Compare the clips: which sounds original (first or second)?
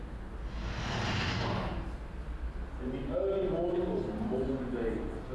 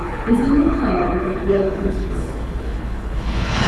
first